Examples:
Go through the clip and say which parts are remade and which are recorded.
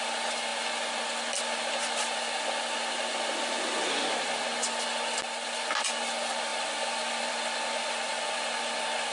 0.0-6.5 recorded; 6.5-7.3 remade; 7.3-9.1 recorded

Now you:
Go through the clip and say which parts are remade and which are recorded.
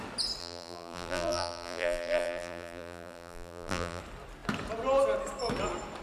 0.0-0.4 recorded; 0.4-4.0 remade; 4.0-6.0 recorded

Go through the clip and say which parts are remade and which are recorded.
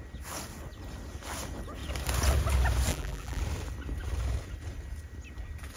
0.0-2.9 recorded; 2.9-3.4 remade; 3.4-5.8 recorded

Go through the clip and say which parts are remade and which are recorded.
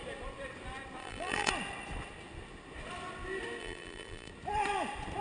0.0-1.0 recorded; 1.0-1.5 remade; 1.5-3.6 recorded; 3.6-4.3 remade; 4.3-5.2 recorded